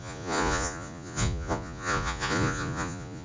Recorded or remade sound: remade